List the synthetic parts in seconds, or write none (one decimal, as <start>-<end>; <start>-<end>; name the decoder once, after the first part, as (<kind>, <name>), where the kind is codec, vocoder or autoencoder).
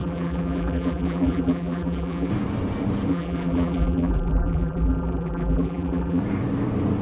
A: 0.0-2.3 (vocoder, BigVGAN v2); 3.1-6.2